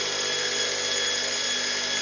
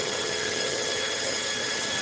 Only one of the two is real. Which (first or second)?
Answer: first